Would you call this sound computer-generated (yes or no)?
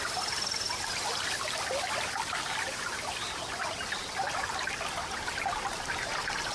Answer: no